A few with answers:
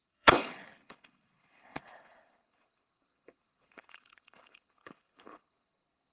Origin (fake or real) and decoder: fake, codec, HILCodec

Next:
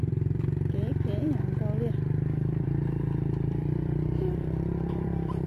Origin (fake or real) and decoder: fake, vocoder, BigVGAN v2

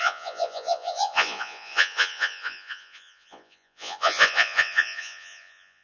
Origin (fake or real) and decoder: fake, vocoder, Vocos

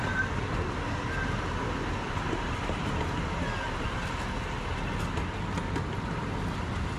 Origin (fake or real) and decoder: real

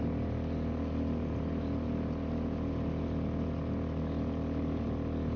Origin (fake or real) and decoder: real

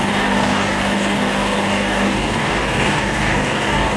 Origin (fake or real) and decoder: fake, codec, DAC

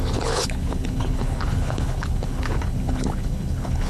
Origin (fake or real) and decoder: fake, codec, HILCodec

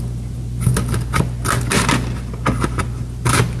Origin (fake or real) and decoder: real